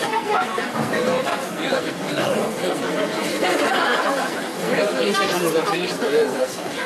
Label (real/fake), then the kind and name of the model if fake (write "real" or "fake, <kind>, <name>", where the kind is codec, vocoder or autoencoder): fake, codec, SNAC